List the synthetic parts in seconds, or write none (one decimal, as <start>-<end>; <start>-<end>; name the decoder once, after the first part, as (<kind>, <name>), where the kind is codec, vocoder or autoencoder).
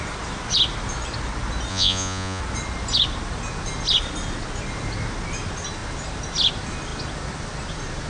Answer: 1.7-2.4 (vocoder, Vocos)